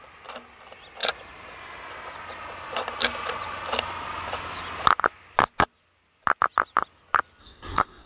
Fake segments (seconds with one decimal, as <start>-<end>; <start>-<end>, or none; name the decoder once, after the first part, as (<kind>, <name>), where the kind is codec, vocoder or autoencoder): 7.4-8.1 (codec, SNAC)

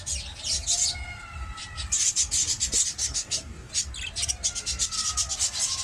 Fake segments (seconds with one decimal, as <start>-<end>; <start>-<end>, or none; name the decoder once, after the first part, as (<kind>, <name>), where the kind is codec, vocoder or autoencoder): 3.0-3.7 (codec, DAC)

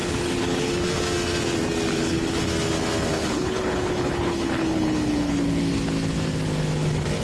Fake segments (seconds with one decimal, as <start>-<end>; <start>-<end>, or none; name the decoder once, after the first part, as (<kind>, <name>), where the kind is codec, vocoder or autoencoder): 0.0-0.7 (codec, HILCodec); 1.9-2.4; 3.1-5.7

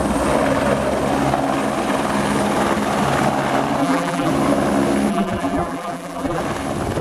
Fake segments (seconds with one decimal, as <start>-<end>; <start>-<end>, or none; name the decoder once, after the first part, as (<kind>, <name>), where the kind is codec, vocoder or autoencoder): 3.8-4.3 (vocoder, BigVGAN v2); 5.1-6.4